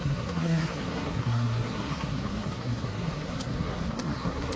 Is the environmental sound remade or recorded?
remade